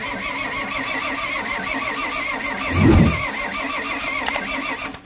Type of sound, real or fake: real